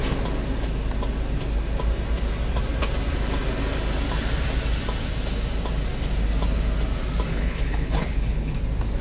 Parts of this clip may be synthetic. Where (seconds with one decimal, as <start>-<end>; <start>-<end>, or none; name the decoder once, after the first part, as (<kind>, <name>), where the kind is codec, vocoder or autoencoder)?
7.3-8.6 (codec, HILCodec)